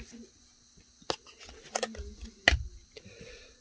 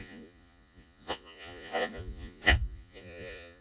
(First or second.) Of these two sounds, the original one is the first